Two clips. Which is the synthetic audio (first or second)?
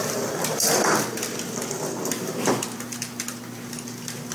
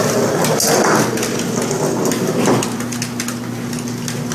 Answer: first